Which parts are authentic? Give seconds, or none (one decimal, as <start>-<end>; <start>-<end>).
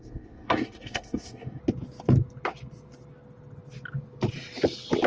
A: 1.6-5.1